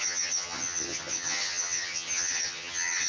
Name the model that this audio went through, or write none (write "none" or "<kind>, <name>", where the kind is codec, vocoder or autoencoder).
vocoder, HiFi-GAN